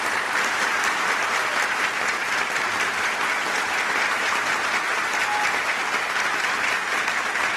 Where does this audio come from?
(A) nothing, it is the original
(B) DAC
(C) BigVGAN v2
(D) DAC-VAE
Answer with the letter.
A